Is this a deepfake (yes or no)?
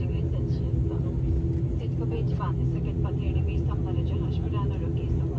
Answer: no